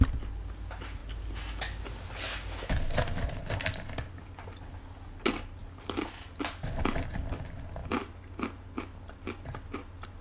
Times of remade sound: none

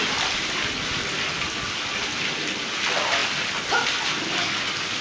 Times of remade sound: none

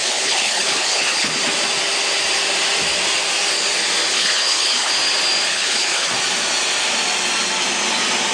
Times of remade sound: 0.0-1.3 (codec, HILCodec); 4.1-4.9; 5.5-6.1

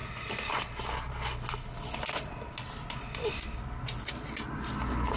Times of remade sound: none

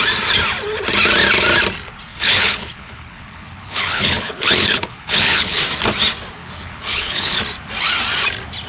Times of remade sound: 2.1-5.6 (codec, HILCodec); 6.4-7.4

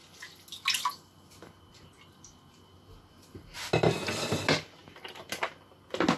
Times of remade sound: none

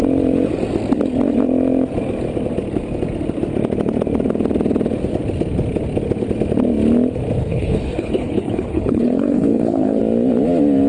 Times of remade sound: 7.4-10.0 (codec, HILCodec)